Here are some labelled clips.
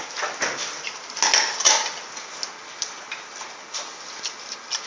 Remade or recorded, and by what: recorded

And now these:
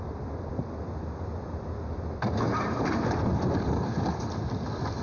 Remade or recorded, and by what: remade, vocoder, BigVGAN v2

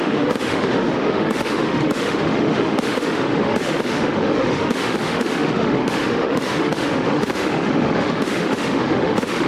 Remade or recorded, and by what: remade, autoencoder, DAC-VAE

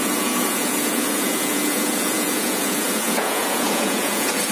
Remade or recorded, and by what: remade, vocoder, Vocos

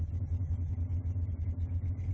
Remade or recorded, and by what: recorded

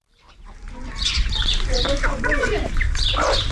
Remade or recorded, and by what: remade, vocoder, BigVGAN v2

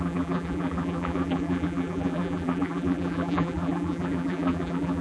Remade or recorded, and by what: remade, vocoder, BigVGAN v2